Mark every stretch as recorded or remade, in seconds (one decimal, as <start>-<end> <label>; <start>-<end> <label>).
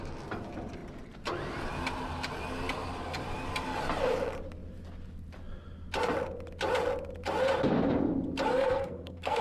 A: 0.0-8.5 recorded; 8.5-9.4 remade